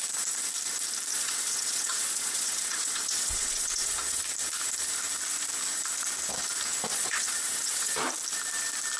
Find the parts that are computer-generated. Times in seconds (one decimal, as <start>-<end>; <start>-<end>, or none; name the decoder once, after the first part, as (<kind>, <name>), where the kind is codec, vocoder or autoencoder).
1.1-4.2 (vocoder, WaveNeXt); 6.9-8.0